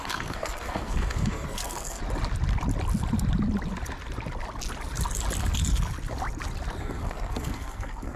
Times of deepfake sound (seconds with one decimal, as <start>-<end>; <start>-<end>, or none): 0.0-2.0; 6.8-8.2